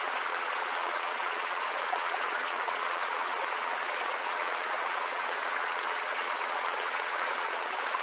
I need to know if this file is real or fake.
fake